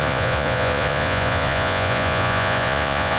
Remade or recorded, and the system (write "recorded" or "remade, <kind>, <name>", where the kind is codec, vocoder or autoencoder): remade, vocoder, Vocos